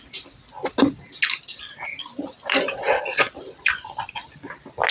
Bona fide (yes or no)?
yes